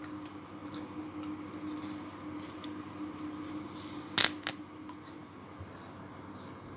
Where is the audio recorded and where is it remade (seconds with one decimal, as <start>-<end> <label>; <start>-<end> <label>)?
0.0-6.8 recorded